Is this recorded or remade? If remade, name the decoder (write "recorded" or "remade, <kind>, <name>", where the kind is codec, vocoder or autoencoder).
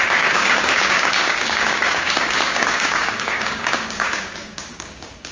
remade, codec, DAC